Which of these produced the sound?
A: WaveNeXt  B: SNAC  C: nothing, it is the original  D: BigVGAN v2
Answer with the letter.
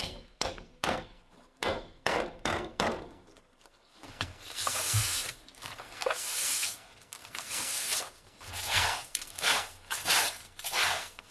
B